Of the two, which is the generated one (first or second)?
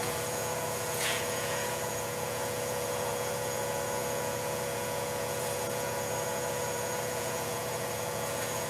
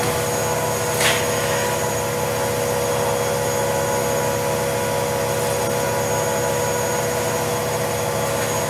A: first